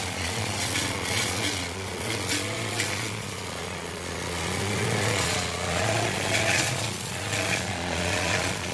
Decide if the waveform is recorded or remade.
remade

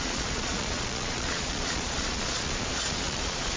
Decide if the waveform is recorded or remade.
remade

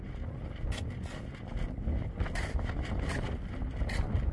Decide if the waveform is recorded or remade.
recorded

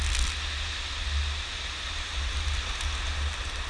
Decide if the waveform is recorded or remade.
recorded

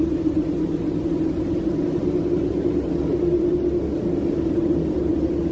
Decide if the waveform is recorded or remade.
recorded